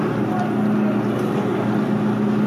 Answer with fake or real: real